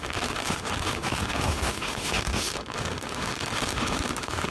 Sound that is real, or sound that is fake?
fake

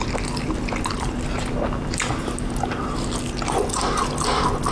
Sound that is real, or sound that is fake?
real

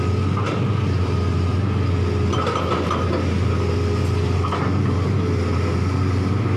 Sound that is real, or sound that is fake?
real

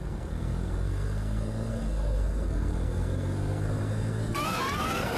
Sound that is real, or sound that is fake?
fake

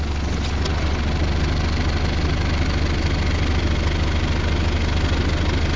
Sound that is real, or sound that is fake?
real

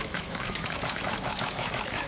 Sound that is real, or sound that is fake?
fake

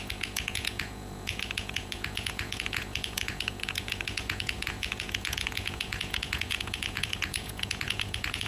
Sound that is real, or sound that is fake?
fake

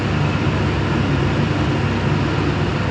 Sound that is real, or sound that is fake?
real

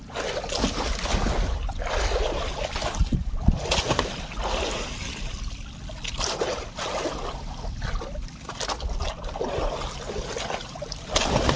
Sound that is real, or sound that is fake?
real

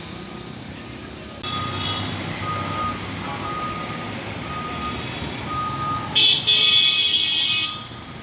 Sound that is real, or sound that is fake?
real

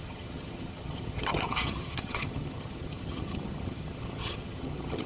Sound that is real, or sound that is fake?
fake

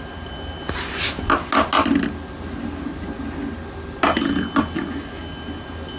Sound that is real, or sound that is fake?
real